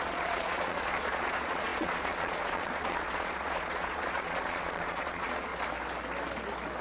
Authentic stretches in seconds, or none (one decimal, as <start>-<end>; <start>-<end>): 5.5-6.8